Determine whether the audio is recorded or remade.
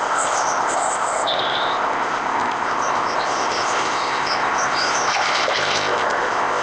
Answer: remade